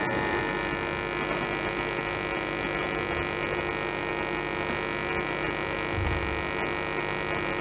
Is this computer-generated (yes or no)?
no